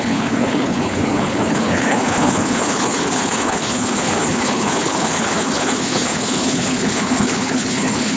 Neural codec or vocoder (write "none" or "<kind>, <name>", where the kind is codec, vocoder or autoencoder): codec, HILCodec